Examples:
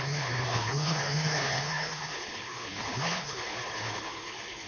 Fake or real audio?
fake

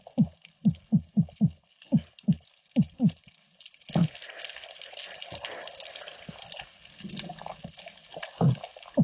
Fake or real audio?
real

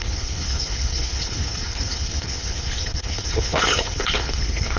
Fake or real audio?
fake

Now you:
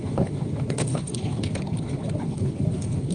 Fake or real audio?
fake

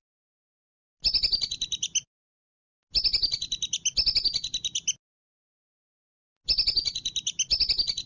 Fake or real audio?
real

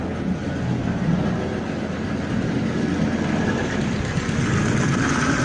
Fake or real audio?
real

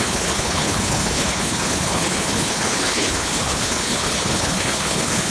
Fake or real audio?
fake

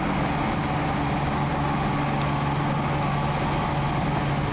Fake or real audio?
real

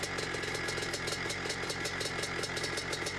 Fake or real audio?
real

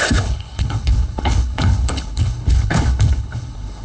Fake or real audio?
fake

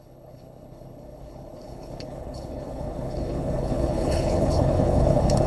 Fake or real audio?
fake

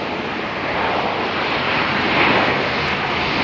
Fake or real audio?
real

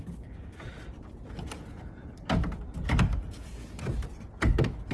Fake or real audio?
real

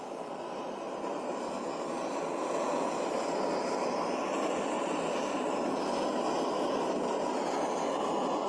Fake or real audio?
real